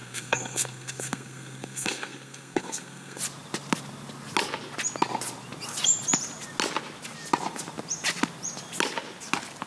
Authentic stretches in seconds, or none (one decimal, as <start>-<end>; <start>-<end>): 3.2-9.7